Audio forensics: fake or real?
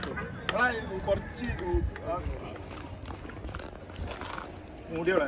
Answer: real